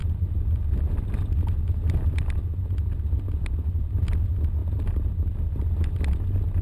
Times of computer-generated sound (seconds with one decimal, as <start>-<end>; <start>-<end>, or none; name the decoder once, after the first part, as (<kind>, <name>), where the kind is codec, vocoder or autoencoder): none